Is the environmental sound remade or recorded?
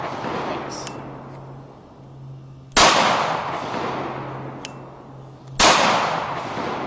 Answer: recorded